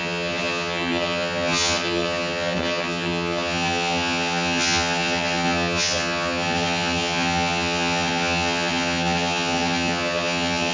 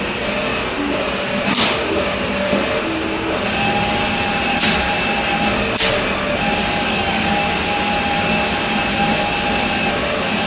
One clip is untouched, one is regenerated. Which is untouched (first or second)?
second